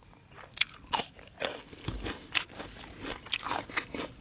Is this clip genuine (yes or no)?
yes